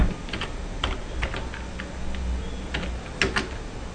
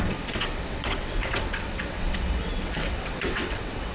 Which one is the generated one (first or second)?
second